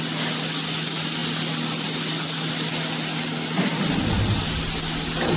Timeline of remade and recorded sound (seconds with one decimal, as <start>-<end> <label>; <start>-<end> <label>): 0.0-5.4 recorded